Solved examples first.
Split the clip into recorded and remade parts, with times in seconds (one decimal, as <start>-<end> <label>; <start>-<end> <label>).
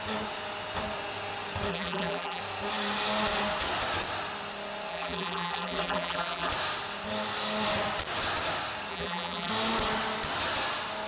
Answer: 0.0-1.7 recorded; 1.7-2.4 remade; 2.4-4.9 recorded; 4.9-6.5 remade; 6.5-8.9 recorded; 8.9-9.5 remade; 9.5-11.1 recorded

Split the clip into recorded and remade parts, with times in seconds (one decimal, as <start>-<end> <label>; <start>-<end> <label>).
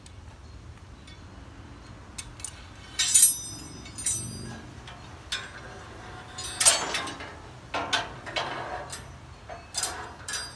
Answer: 0.0-10.6 recorded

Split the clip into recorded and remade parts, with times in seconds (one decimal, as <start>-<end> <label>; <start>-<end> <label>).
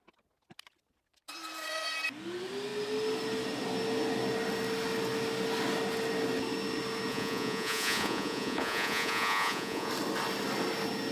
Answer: 0.0-7.1 recorded; 7.1-9.9 remade; 9.9-11.1 recorded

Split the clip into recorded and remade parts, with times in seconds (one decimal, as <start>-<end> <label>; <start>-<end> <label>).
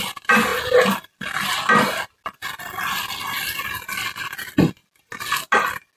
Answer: 0.0-6.0 recorded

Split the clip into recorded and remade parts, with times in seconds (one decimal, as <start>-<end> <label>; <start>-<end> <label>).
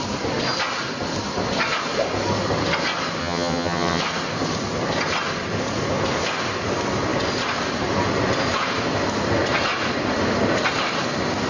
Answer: 0.0-3.2 recorded; 3.2-4.0 remade; 4.0-11.5 recorded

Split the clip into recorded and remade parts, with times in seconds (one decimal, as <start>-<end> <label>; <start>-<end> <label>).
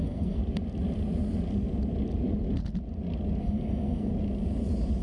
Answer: 0.0-0.4 remade; 0.4-3.4 recorded; 3.4-4.1 remade; 4.1-5.0 recorded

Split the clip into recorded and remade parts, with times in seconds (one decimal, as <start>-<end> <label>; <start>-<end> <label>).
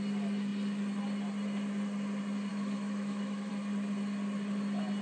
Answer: 0.0-2.5 recorded; 2.5-3.5 remade; 3.5-5.0 recorded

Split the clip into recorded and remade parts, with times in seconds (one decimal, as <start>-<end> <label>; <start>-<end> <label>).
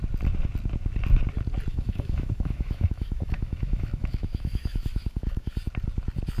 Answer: 0.0-1.7 recorded; 1.7-5.5 remade; 5.5-6.4 recorded